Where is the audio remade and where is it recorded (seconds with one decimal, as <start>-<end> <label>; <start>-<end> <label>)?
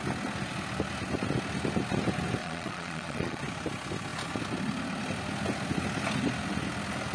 0.0-2.4 recorded; 2.4-3.4 remade; 3.4-7.1 recorded